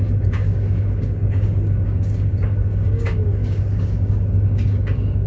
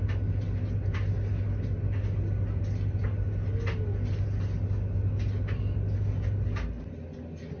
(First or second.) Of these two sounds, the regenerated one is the first